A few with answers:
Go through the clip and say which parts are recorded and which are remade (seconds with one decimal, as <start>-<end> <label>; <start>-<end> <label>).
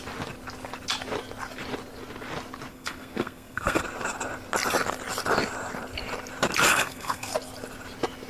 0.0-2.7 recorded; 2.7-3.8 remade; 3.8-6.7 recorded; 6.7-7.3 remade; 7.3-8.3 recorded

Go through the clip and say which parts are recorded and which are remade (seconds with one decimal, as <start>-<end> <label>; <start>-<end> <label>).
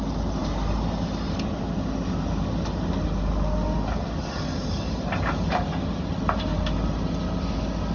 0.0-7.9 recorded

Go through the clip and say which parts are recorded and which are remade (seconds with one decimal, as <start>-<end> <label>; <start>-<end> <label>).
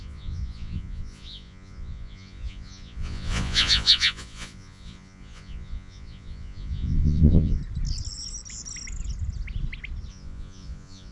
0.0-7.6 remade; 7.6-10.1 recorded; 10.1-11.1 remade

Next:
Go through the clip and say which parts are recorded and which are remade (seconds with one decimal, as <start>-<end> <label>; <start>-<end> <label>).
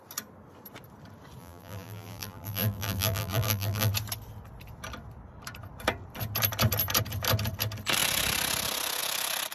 0.0-1.4 recorded; 1.4-3.9 remade; 3.9-9.5 recorded